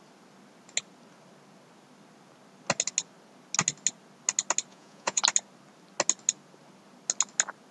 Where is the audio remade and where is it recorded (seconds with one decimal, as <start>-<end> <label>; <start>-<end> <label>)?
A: 0.0-4.7 recorded; 4.7-5.2 remade; 5.2-7.7 recorded